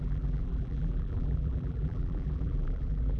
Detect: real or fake fake